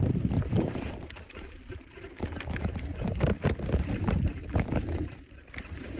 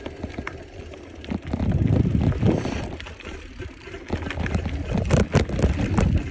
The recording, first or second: second